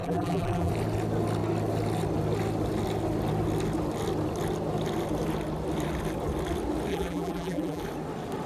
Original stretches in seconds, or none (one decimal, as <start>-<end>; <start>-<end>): 0.7-6.9; 7.8-8.5